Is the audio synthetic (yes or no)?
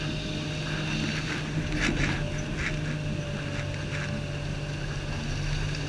no